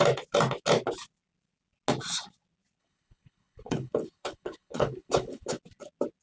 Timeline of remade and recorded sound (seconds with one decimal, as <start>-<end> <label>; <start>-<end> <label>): 0.0-2.8 recorded; 2.8-5.6 remade; 5.6-6.2 recorded